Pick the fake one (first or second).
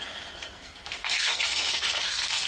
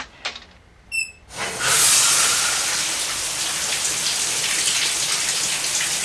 first